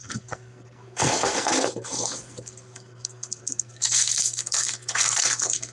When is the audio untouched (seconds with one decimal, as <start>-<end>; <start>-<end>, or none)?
none

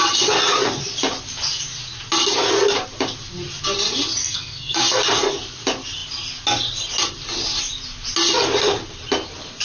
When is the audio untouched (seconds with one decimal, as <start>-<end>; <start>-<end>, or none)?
0.0-4.2; 5.0-9.6

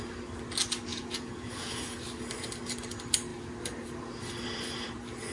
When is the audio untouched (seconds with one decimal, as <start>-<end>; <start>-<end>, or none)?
0.0-0.9; 2.0-5.3

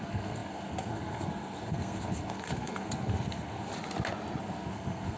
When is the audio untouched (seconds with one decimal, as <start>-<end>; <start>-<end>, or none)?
3.7-4.4